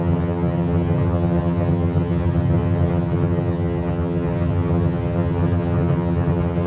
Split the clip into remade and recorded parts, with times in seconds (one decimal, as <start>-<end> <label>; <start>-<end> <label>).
0.0-6.7 remade